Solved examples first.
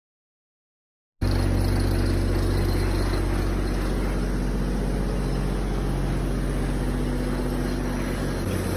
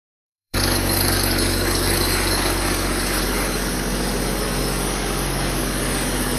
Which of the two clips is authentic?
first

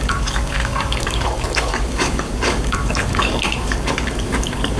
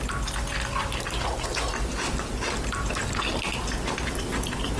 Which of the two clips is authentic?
second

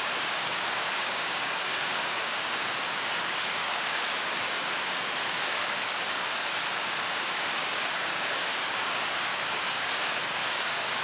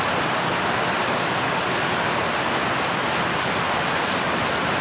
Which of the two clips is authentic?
second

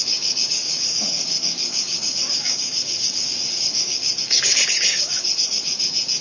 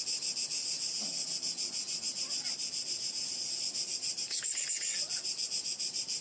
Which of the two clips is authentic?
second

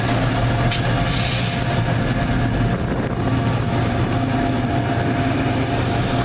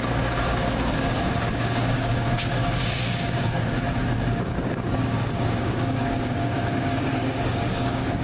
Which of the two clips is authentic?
first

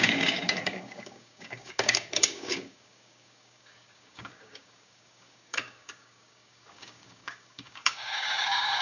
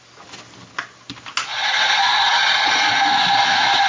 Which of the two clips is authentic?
second